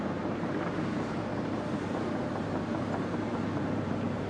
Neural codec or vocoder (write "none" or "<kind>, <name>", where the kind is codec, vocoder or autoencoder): vocoder, BigVGAN v2